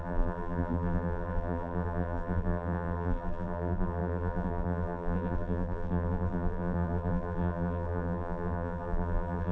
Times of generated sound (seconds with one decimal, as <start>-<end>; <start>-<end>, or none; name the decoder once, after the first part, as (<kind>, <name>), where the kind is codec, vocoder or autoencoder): 0.0-9.5 (vocoder, BigVGAN v2)